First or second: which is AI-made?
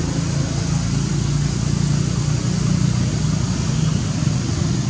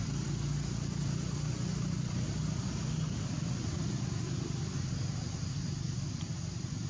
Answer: second